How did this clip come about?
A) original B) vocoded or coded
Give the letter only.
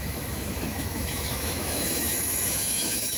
B